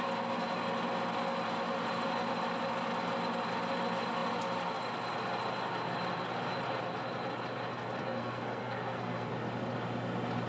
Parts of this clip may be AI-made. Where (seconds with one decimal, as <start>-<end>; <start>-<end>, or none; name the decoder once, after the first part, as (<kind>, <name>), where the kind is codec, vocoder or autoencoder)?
8.0-9.3 (codec, SNAC)